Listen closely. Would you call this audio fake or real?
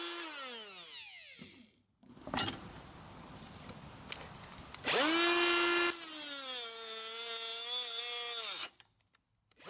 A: real